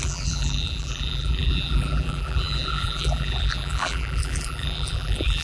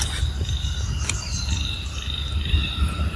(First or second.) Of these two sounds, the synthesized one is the first